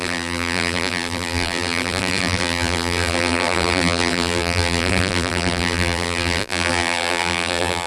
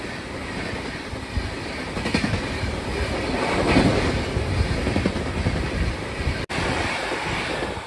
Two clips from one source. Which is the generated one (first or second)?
first